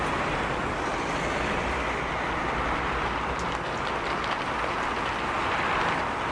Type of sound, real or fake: real